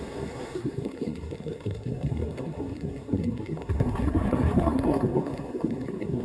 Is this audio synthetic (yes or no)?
yes